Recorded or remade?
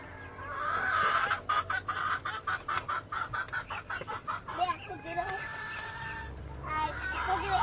recorded